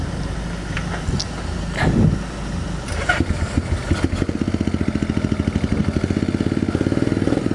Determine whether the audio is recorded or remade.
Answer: recorded